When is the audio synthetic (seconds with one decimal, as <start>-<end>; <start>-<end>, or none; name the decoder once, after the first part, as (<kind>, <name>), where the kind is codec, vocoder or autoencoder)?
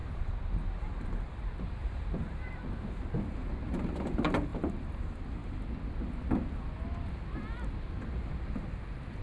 0.0-3.0 (vocoder, BigVGAN v2); 4.5-5.0